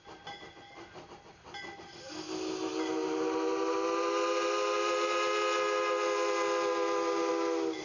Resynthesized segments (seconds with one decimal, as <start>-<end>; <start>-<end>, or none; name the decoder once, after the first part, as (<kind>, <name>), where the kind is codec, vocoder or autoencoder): none